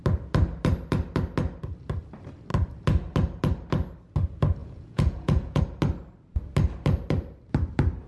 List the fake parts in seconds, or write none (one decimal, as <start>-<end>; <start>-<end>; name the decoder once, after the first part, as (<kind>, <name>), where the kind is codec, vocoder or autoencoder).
4.6-5.6 (vocoder, Vocos)